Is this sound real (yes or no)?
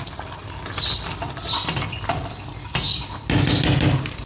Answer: yes